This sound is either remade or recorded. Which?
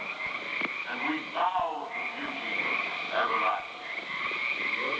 recorded